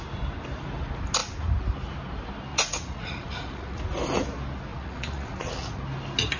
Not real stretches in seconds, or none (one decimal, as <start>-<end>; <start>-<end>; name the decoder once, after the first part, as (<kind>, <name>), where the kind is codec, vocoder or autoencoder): 2.5-3.8 (vocoder, Vocos); 4.7-5.8